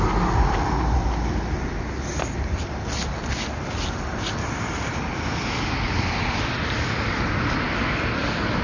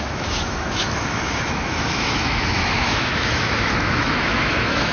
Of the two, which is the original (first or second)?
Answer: first